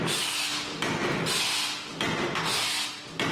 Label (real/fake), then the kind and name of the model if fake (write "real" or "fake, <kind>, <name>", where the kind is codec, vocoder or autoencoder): real